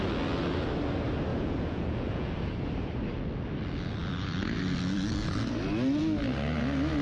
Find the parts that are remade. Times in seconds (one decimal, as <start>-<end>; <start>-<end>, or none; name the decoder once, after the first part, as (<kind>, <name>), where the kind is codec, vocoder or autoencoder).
1.3-2.3 (vocoder, Vocos)